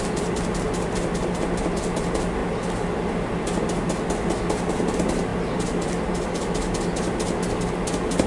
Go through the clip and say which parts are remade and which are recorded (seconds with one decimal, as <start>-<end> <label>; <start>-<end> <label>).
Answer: 0.0-8.3 recorded